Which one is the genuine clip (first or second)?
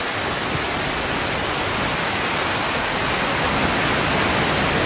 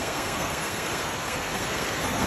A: first